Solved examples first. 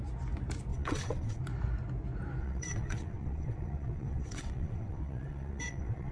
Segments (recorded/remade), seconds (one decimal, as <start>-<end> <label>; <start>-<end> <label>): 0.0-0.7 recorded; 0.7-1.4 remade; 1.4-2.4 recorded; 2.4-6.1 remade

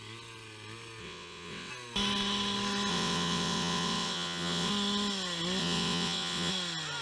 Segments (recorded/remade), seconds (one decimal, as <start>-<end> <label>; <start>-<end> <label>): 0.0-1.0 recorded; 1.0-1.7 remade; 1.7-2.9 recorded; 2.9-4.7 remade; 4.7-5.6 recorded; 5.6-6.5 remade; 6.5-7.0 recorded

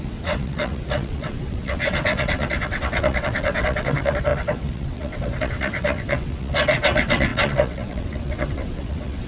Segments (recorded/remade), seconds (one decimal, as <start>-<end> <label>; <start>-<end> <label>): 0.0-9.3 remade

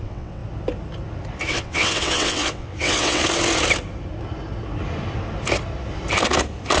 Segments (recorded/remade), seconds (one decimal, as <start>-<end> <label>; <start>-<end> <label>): 0.0-0.4 remade; 0.4-1.5 recorded; 1.5-3.2 remade; 3.2-6.8 recorded

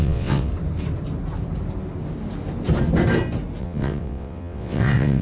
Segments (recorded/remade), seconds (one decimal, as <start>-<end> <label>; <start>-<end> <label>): 0.0-0.5 remade; 0.5-3.6 recorded; 3.6-5.2 remade

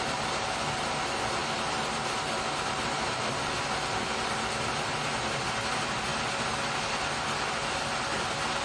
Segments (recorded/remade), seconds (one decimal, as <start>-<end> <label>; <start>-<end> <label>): 0.0-8.6 recorded

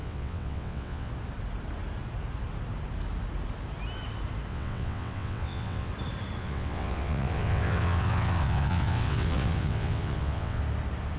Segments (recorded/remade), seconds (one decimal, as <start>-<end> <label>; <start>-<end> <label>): 0.0-1.1 remade; 1.1-4.5 recorded; 4.5-5.9 remade; 5.9-6.4 recorded; 6.4-10.6 remade; 10.6-11.2 recorded

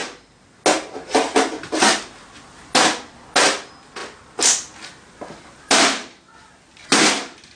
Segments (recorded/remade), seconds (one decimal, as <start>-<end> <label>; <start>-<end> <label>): 0.0-7.6 recorded